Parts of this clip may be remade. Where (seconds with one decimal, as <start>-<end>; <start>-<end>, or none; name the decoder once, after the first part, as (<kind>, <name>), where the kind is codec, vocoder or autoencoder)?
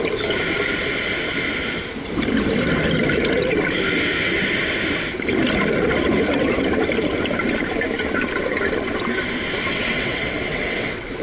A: 9.7-11.2 (vocoder, WaveNeXt)